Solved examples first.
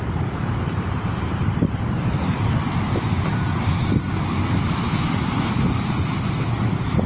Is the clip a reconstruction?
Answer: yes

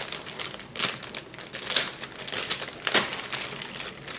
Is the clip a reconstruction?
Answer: no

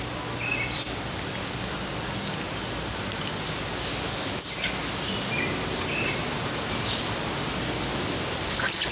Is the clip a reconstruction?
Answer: no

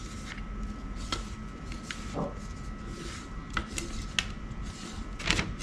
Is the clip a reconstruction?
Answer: no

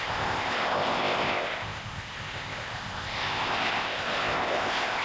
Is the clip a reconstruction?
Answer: yes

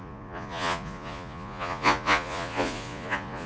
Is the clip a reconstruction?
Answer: yes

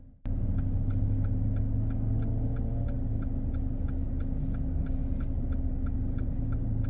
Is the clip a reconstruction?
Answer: no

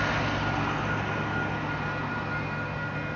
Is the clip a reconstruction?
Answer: no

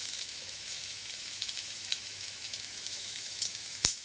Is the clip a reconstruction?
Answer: yes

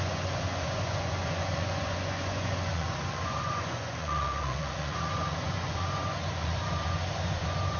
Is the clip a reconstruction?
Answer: yes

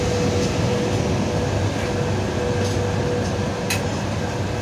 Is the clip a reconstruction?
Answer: no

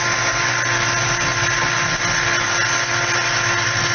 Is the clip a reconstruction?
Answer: no